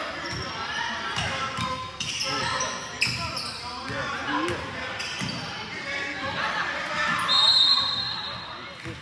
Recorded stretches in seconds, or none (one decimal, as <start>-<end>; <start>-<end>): 0.0-1.6; 2.1-9.0